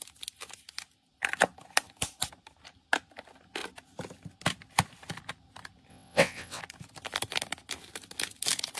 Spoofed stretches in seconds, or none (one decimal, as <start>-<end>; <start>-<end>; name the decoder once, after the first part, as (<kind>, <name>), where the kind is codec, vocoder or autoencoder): 5.9-6.6 (vocoder, WaveNeXt)